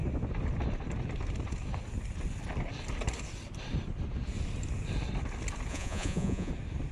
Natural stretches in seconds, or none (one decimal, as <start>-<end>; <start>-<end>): 0.0-5.7; 6.5-6.9